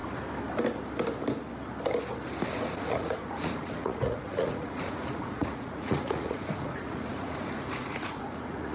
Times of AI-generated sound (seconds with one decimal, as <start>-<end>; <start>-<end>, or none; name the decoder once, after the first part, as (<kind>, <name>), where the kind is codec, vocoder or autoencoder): 2.5-8.7 (vocoder, Vocos)